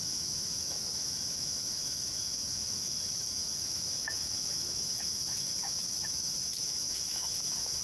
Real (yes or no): no